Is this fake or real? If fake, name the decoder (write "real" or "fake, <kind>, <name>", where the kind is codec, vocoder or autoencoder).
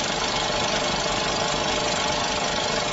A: real